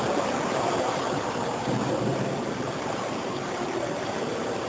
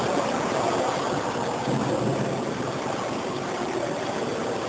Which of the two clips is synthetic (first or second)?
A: first